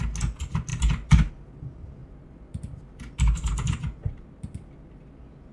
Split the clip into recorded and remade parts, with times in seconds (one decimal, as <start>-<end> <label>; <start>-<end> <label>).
0.0-0.7 recorded; 0.7-1.3 remade; 1.3-5.5 recorded